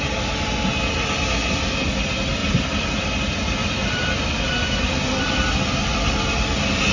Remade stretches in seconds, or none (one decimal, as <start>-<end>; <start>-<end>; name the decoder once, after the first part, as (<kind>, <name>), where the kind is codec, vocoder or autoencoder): 2.4-3.0 (vocoder, BigVGAN v2); 3.6-4.1